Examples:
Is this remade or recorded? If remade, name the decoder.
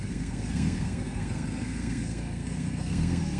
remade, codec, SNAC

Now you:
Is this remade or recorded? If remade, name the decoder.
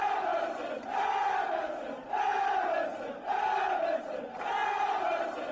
recorded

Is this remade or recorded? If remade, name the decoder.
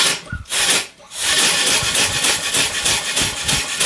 recorded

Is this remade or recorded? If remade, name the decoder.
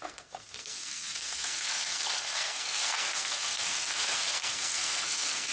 remade, codec, SNAC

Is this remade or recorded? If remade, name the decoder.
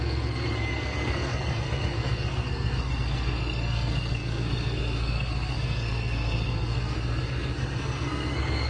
remade, codec, SNAC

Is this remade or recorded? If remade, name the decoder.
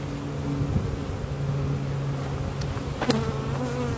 recorded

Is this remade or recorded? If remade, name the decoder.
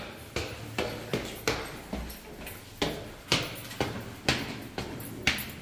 recorded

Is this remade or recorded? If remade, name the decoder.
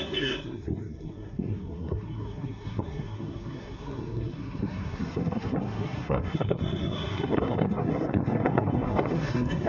remade, codec, SNAC